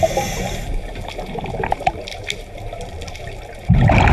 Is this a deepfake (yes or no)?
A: no